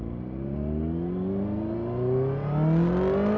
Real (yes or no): yes